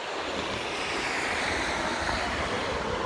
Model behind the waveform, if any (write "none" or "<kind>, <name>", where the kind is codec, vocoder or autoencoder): none